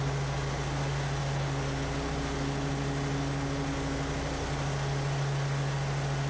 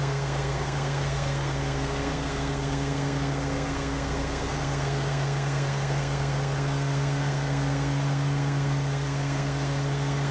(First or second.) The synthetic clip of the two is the second